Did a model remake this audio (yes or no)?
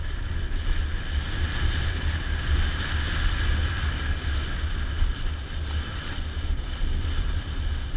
no